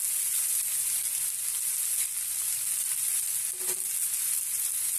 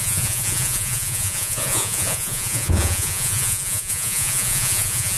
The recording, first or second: first